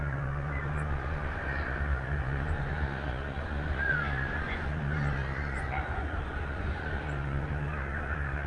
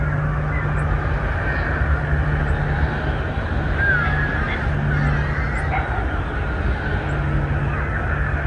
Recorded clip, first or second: second